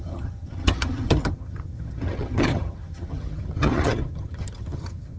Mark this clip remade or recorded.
remade